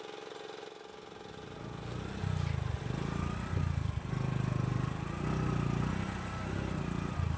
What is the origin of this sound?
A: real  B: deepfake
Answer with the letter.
A